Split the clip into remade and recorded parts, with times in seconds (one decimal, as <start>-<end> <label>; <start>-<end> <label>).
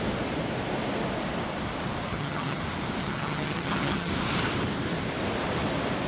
0.0-2.1 recorded; 2.1-2.6 remade; 2.6-3.0 recorded; 3.0-4.1 remade; 4.1-6.1 recorded